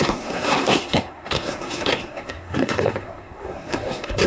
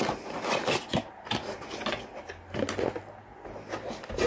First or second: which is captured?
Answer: second